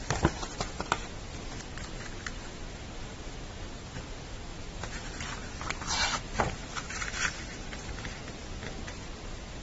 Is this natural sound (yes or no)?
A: yes